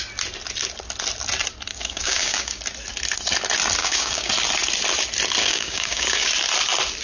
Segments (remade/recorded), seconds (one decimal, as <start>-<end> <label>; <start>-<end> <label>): 0.0-1.7 recorded; 1.7-2.6 remade; 2.6-3.8 recorded; 3.8-4.3 remade; 4.3-5.4 recorded; 5.4-6.3 remade; 6.3-7.0 recorded